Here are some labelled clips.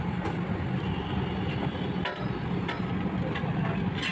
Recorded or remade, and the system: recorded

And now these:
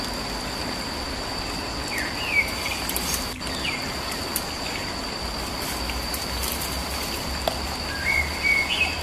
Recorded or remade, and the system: recorded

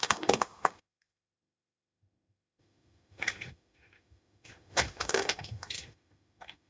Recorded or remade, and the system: remade, autoencoder, DAC-VAE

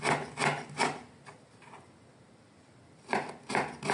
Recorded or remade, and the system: recorded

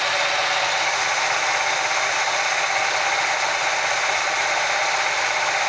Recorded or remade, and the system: recorded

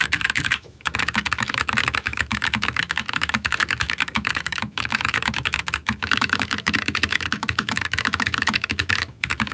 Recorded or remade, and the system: remade, autoencoder, DAC-VAE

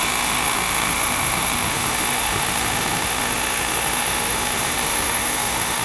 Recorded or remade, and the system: remade, autoencoder, DAC-VAE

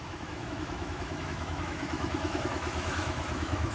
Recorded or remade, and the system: remade, autoencoder, DAC-VAE